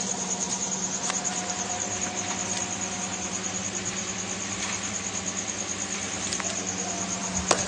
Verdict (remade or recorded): recorded